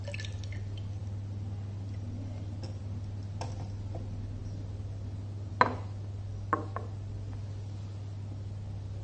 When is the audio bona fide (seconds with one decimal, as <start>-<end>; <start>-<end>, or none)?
0.0-9.0